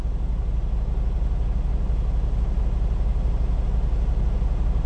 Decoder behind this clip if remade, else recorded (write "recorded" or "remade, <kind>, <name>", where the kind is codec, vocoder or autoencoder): recorded